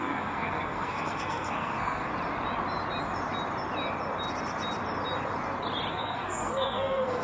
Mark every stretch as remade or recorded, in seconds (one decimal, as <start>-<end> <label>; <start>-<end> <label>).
0.0-2.1 remade; 2.1-5.9 recorded; 5.9-7.2 remade